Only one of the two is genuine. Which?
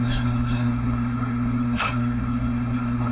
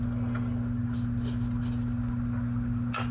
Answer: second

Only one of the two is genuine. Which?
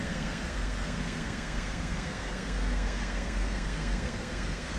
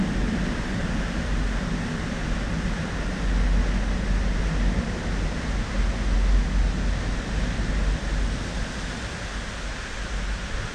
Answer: second